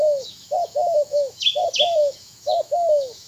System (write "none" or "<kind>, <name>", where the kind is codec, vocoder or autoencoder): autoencoder, DAC-VAE